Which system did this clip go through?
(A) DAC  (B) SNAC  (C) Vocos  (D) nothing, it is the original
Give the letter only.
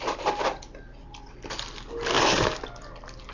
D